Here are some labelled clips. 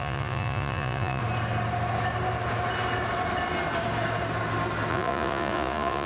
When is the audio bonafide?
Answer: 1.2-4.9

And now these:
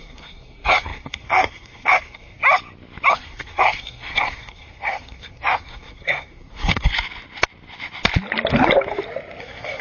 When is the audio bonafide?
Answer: 2.4-3.1; 6.9-9.4

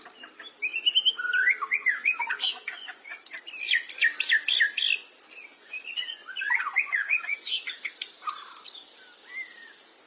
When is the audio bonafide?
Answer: 0.0-1.7; 3.2-5.5; 7.9-10.1